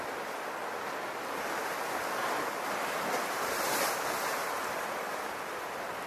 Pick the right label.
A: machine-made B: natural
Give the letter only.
B